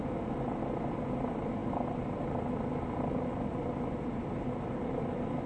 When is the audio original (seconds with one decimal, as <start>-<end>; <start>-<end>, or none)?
0.0-5.5